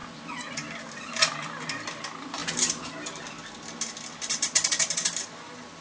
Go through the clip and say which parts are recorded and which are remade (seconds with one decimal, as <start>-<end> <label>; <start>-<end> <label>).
0.0-5.8 recorded

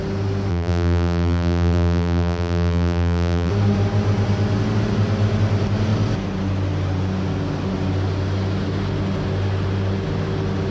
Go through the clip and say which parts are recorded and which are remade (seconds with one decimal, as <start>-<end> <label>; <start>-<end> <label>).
0.0-0.5 recorded; 0.5-3.5 remade; 3.5-10.7 recorded

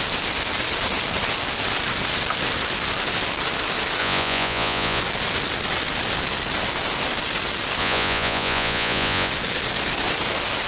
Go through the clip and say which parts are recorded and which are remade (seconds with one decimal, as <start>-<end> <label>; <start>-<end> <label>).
0.0-4.0 recorded; 4.0-5.0 remade; 5.0-7.8 recorded; 7.8-9.3 remade; 9.3-10.7 recorded

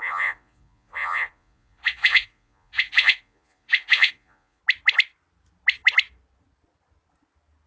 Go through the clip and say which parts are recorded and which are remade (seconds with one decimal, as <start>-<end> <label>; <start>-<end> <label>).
0.0-4.6 remade; 4.6-7.7 recorded

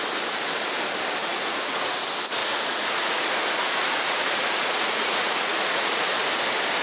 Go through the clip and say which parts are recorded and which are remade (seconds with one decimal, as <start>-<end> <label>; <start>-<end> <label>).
0.0-1.2 recorded; 1.2-2.0 remade; 2.0-2.4 recorded; 2.4-6.3 remade; 6.3-6.8 recorded

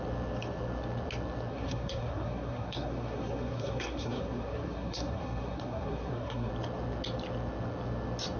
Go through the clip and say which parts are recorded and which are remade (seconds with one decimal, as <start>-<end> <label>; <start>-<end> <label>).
0.0-1.5 recorded; 1.5-6.5 remade; 6.5-8.4 recorded